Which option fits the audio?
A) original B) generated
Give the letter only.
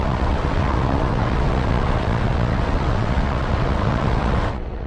B